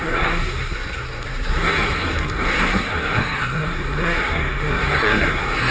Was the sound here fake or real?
fake